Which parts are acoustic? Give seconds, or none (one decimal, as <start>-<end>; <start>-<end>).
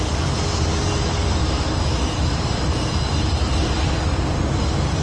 0.0-1.4; 2.3-5.0